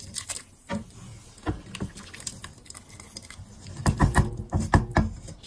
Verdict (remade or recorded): recorded